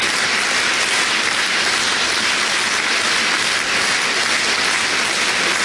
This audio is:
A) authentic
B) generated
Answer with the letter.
A